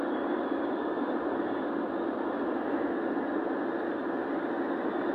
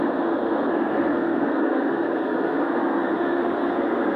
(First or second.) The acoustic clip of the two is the first